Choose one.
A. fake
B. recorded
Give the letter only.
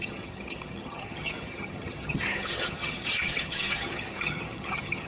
A